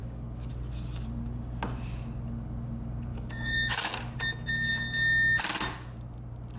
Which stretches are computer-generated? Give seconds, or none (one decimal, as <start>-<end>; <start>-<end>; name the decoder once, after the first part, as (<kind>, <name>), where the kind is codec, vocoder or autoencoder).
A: 0.0-0.5 (codec, DAC); 3.1-3.9